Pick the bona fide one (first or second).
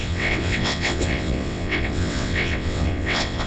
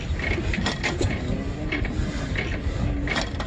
second